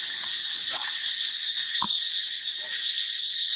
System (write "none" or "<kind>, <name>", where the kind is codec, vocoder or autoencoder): none